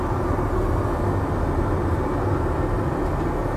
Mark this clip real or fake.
real